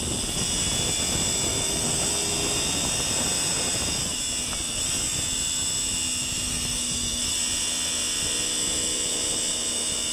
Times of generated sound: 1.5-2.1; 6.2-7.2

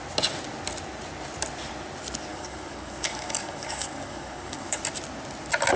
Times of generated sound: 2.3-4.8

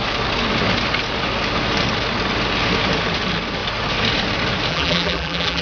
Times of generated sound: 4.7-5.6

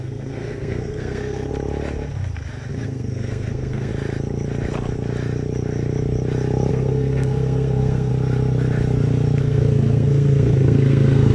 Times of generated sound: 0.0-1.5; 2.7-3.9; 6.7-8.1; 9.4-11.3

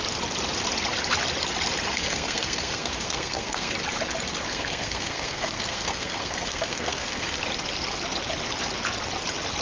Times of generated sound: 1.9-3.7; 4.5-7.4

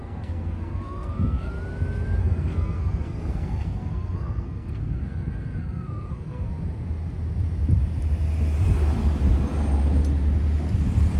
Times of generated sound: 0.0-1.5; 2.2-6.5

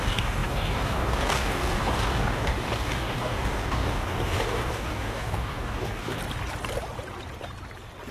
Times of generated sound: 0.0-6.2